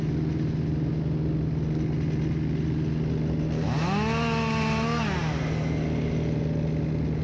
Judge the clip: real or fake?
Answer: real